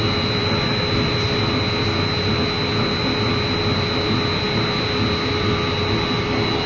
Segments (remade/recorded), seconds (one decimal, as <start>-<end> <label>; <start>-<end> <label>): 0.0-6.7 recorded